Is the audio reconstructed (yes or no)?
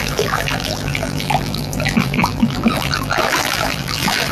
yes